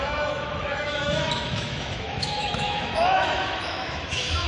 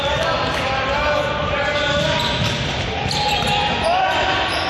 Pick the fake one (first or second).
first